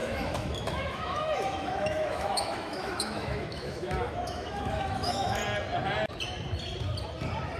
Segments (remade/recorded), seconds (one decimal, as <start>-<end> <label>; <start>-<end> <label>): 0.0-5.4 remade; 5.4-7.6 recorded